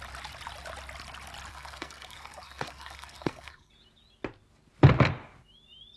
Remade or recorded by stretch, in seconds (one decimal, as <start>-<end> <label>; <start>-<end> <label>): 0.0-1.5 recorded; 1.5-3.7 remade; 3.7-6.0 recorded